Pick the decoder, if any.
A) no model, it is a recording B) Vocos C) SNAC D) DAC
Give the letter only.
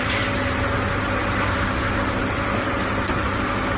A